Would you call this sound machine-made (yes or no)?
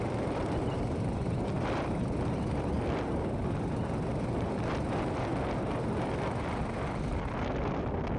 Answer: no